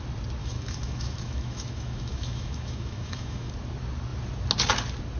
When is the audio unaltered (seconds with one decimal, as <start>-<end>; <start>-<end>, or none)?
0.0-0.4; 3.5-5.2